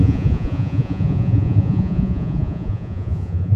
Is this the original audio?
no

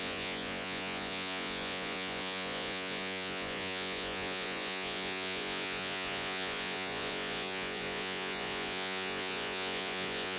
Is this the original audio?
no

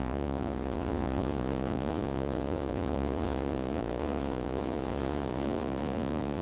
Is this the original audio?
no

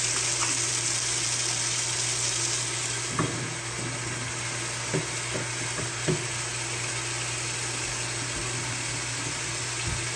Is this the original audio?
yes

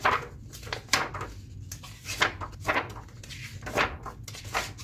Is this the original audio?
yes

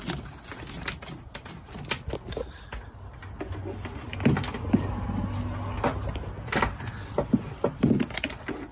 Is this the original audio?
yes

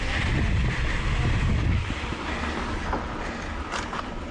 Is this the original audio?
yes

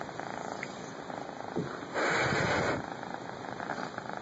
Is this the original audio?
yes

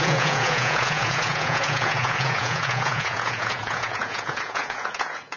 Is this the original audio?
no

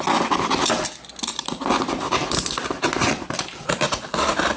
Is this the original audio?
yes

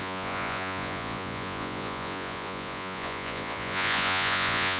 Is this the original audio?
no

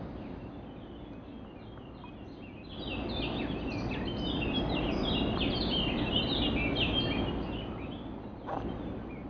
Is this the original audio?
yes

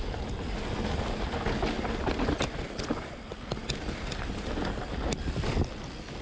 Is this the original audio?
yes